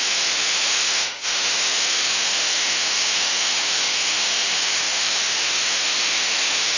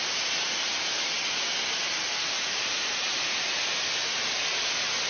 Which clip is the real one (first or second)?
second